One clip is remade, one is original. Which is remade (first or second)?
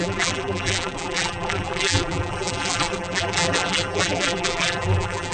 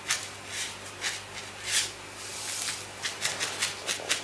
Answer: first